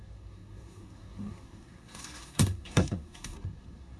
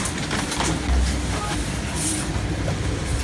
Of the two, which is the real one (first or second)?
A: second